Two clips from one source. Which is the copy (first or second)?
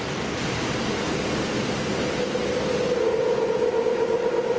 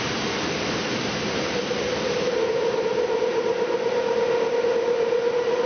second